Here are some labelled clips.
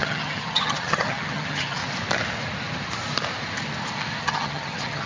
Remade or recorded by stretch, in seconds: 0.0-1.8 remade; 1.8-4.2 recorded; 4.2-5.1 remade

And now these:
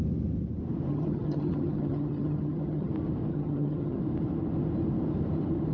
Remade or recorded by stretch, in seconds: 0.0-0.9 recorded; 0.9-2.9 remade; 2.9-3.3 recorded; 3.3-4.0 remade; 4.0-5.7 recorded

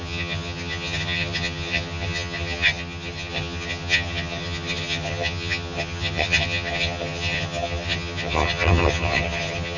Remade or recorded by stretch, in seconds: 0.0-9.8 remade